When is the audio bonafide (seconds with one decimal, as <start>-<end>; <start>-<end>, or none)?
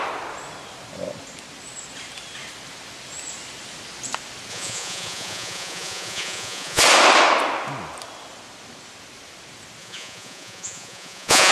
0.0-4.5; 6.8-9.8